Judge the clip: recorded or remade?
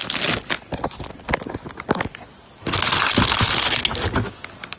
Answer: recorded